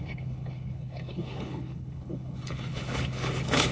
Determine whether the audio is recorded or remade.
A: remade